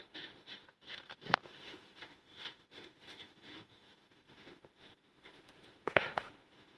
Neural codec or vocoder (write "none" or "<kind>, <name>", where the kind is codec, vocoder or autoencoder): autoencoder, DAC-VAE